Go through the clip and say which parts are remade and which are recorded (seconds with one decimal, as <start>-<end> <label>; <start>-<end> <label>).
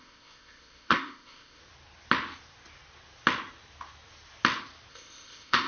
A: 0.0-1.6 remade; 1.6-4.9 recorded; 4.9-5.7 remade